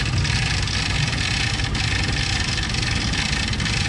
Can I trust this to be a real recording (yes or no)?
yes